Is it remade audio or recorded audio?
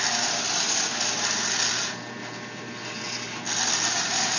recorded